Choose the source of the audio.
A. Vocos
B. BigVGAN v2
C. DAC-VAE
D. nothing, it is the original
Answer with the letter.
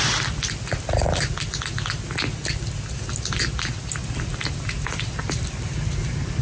D